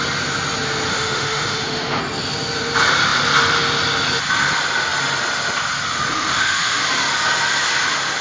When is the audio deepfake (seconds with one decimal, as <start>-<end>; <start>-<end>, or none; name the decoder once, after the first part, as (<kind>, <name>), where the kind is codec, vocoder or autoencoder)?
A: 0.9-2.0 (autoencoder, DAC-VAE); 6.1-6.8